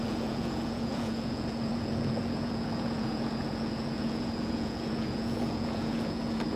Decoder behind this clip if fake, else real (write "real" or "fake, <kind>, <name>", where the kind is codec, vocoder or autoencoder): fake, vocoder, Vocos